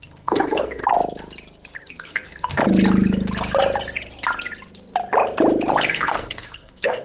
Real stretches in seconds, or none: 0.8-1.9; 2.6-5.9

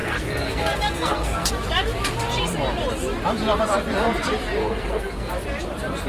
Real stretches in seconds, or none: 1.5-4.6; 5.3-6.1

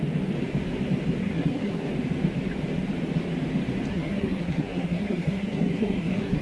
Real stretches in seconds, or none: 0.0-1.2; 1.9-3.9

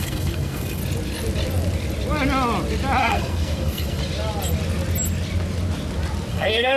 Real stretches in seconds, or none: 0.8-3.0; 4.0-6.3

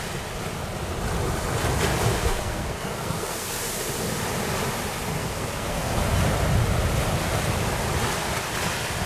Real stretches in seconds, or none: 0.0-2.2; 3.6-5.2; 6.2-9.1